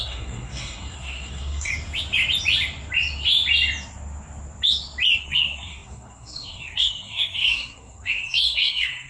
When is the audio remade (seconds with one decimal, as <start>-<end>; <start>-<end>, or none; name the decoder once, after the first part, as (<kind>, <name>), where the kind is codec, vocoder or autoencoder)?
0.0-1.7 (codec, SNAC); 5.2-9.1